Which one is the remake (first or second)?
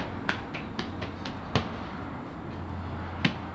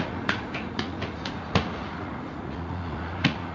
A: second